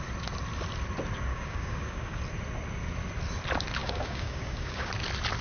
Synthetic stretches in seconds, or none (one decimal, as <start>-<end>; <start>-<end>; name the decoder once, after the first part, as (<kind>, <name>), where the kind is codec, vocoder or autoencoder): 1.3-2.2 (codec, DAC); 3.8-4.9